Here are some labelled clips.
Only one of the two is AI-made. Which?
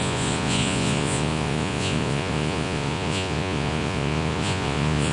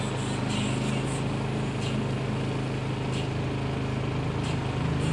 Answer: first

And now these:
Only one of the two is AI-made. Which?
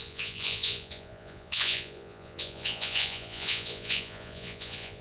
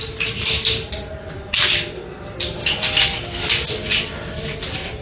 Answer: first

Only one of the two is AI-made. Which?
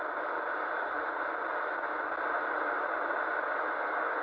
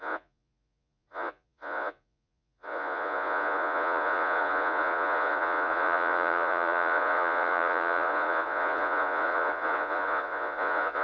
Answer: second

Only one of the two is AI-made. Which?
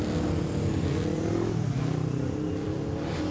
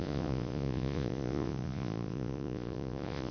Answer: second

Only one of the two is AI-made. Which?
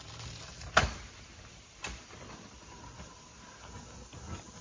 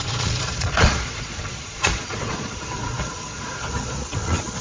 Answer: second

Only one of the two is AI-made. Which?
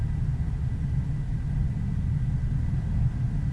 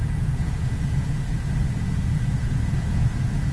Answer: second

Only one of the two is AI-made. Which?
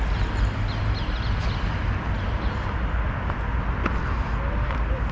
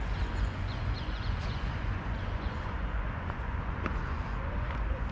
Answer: second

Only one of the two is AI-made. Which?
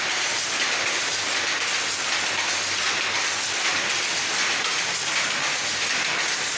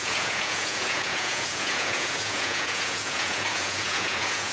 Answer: second